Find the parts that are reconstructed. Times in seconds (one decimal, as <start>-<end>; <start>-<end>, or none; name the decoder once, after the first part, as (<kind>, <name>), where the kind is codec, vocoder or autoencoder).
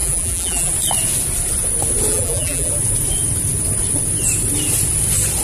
0.0-0.7 (vocoder, BigVGAN v2); 2.1-2.7